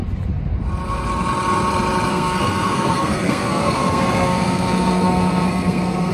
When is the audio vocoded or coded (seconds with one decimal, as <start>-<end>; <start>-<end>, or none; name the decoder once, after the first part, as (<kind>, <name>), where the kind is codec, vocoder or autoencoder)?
2.1-6.1 (codec, SNAC)